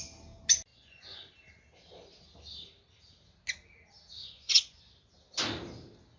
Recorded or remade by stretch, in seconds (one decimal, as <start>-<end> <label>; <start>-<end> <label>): 0.0-0.7 recorded; 0.7-1.3 remade; 1.3-4.2 recorded; 4.2-4.8 remade; 4.8-6.2 recorded